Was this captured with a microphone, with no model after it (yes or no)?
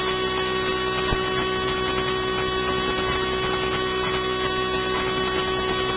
yes